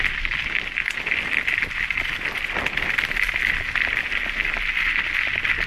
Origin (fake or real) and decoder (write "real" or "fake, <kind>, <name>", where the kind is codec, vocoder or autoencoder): real